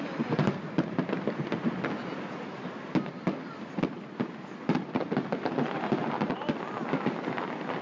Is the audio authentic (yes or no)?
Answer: yes